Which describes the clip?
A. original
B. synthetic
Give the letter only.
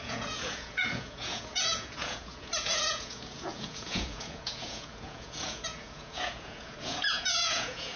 B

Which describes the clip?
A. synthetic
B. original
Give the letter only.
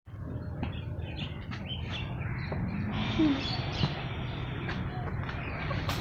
B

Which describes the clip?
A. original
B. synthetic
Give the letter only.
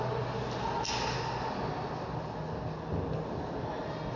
A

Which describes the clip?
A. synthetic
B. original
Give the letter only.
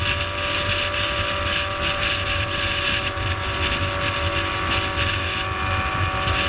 B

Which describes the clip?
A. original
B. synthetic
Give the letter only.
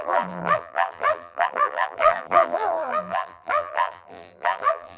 B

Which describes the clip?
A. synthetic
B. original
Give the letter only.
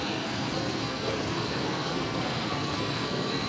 A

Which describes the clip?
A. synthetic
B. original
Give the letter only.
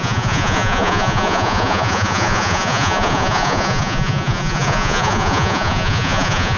A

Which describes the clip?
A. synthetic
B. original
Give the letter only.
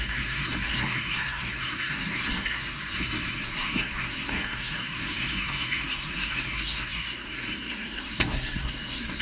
A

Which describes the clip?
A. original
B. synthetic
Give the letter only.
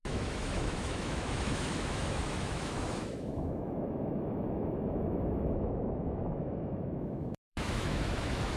B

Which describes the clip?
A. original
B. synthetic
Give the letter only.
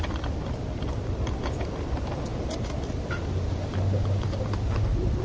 A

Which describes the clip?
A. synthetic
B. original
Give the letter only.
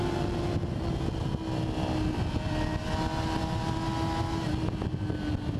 B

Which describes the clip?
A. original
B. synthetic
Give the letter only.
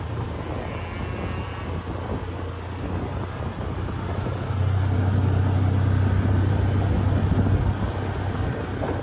A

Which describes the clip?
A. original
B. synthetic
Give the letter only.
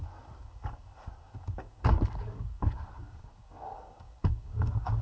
B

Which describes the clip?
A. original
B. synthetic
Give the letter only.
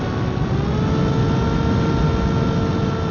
A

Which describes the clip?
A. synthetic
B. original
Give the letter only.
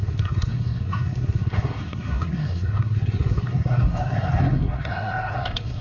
A